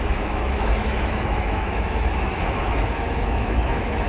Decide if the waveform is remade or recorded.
remade